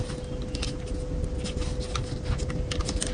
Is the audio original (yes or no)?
yes